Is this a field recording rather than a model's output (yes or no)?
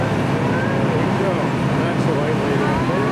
yes